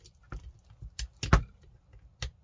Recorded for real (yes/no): yes